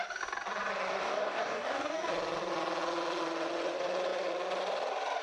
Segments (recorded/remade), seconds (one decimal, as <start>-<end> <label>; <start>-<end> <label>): 0.0-1.0 recorded; 1.0-2.1 remade; 2.1-5.2 recorded